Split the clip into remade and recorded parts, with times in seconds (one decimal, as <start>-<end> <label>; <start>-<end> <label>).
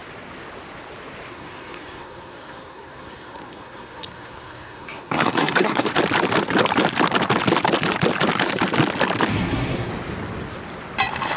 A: 0.0-1.3 recorded; 1.3-5.9 remade; 5.9-9.3 recorded; 9.3-9.9 remade; 9.9-11.4 recorded